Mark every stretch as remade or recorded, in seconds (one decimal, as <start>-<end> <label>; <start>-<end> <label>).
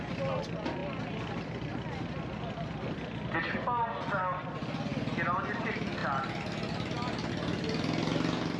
0.0-8.6 recorded